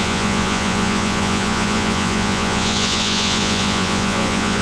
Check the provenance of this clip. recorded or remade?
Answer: remade